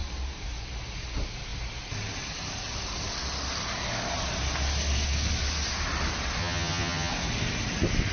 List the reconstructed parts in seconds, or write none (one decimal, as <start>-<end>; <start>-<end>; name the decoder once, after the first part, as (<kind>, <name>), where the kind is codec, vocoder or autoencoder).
6.4-7.1 (vocoder, HiFi-GAN)